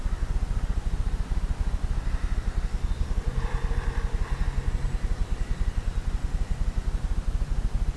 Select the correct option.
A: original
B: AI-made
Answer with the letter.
A